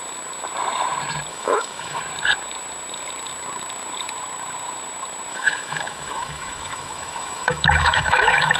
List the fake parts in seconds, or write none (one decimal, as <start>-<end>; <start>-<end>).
1.3-2.0; 5.3-8.6

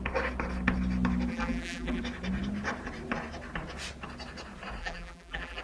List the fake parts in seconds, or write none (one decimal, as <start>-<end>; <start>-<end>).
1.3-2.0; 4.8-5.6

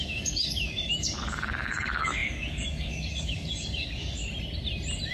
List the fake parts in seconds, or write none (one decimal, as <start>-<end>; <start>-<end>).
0.0-4.2

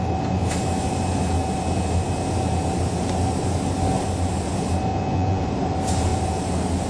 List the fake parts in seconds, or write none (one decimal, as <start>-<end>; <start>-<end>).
4.9-5.4